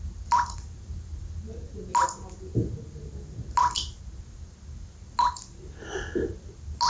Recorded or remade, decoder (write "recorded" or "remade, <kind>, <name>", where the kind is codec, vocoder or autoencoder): recorded